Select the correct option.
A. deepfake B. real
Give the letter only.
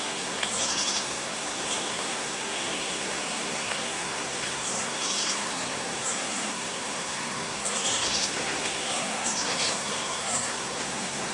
A